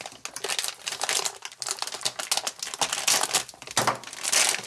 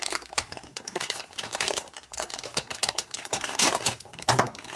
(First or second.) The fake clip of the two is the second